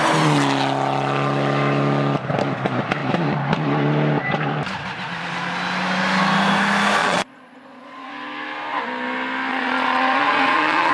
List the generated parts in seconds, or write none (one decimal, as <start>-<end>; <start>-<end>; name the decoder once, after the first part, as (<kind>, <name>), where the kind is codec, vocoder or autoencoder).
7.0-8.1 (vocoder, Vocos); 9.5-10.9